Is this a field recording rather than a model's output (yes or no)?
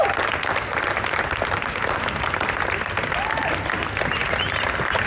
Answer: yes